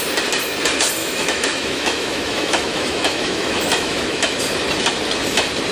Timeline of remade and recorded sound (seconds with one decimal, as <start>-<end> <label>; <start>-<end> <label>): 0.0-1.0 recorded; 1.0-4.4 remade; 4.4-5.7 recorded